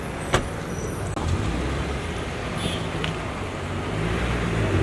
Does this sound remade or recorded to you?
recorded